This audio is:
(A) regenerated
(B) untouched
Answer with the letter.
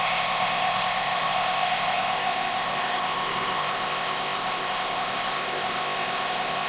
A